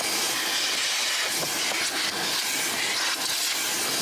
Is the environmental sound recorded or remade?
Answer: recorded